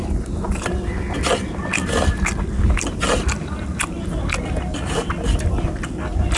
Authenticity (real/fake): real